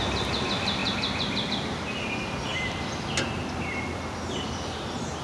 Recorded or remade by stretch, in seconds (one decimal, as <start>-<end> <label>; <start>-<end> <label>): 0.0-5.2 recorded